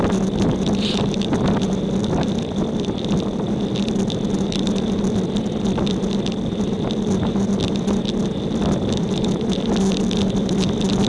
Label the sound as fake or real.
real